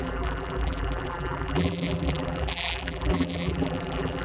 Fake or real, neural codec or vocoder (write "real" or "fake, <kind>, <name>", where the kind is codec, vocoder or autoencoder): fake, vocoder, BigVGAN v2